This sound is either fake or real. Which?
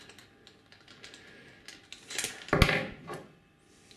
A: real